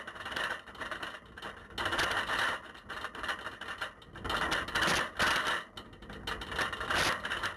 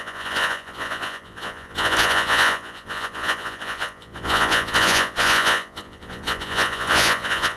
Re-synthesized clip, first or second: second